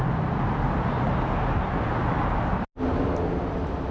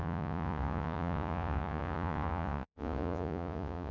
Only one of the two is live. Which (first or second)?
first